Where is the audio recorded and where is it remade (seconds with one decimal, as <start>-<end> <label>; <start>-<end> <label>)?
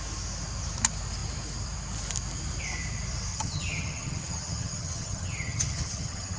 0.0-3.3 recorded; 3.3-6.4 remade